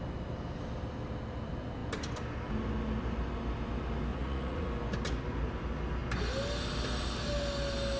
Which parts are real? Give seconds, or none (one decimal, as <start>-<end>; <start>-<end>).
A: 0.0-4.1; 4.7-8.0